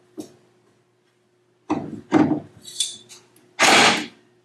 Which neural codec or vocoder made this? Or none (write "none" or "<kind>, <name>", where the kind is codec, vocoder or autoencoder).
none